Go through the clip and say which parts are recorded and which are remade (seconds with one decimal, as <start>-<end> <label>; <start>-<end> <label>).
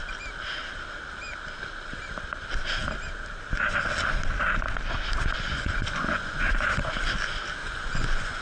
0.0-5.5 recorded; 5.5-6.8 remade; 6.8-7.6 recorded; 7.6-8.4 remade